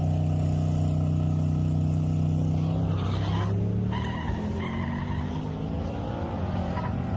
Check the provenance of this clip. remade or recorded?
recorded